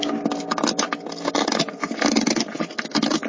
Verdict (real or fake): real